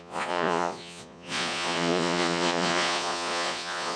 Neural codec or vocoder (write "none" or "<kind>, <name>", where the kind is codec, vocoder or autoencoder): vocoder, Vocos